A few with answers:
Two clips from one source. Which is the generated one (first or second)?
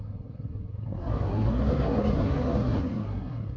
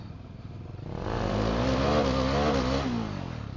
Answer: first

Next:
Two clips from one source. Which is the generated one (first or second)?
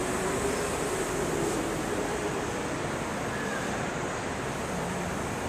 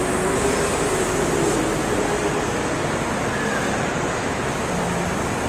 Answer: first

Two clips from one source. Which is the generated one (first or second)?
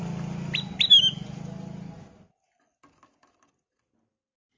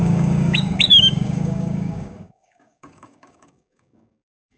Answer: second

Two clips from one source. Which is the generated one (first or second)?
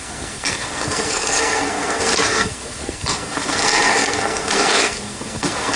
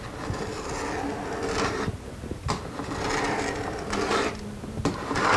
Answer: first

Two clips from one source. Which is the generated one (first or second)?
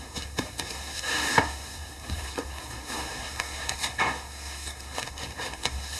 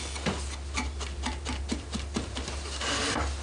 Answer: first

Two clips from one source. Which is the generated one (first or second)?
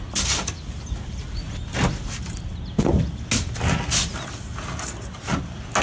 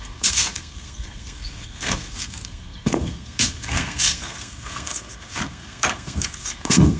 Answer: second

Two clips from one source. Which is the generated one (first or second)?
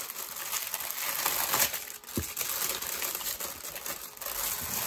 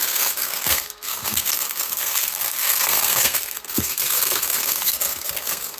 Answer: second